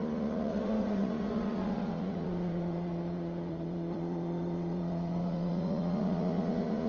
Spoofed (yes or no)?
yes